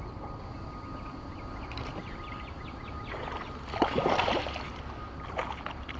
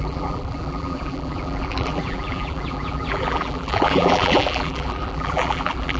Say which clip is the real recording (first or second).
first